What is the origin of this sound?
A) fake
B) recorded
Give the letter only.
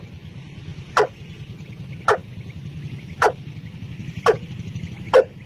B